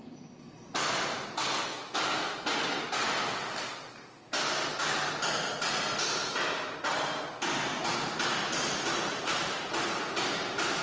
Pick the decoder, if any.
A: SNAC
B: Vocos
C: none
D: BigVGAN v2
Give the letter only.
C